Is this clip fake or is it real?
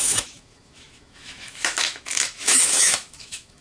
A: fake